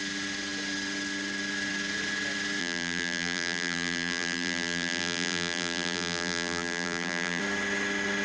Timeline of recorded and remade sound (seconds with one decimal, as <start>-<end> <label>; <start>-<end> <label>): 0.0-2.6 recorded; 2.6-7.4 remade; 7.4-8.2 recorded